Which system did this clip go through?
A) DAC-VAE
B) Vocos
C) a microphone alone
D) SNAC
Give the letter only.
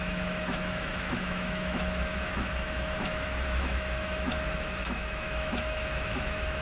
A